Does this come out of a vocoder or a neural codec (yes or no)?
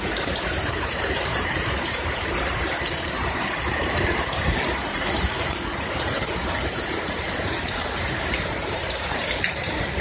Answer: yes